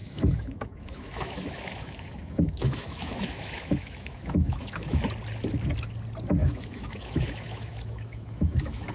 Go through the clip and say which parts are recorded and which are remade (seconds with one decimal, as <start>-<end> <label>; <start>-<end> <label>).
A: 0.0-5.0 remade; 5.0-6.4 recorded; 6.4-8.9 remade